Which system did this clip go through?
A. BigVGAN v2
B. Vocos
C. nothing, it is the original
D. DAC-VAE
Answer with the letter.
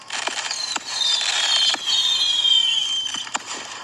A